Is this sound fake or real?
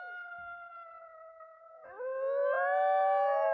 real